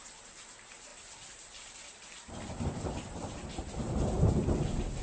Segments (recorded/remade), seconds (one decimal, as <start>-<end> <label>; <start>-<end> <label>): 0.0-5.0 remade